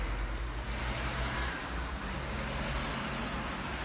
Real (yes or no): yes